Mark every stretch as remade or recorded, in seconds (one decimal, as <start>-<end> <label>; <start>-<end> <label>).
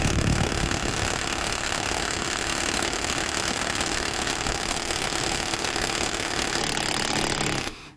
0.0-6.6 remade; 6.6-7.6 recorded; 7.6-8.0 remade